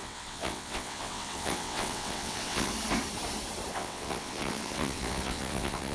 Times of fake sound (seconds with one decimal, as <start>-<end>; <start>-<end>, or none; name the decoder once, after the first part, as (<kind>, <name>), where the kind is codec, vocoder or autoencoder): 0.0-2.7 (vocoder, WaveNeXt); 3.7-5.9